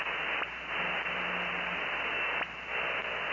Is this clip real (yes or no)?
yes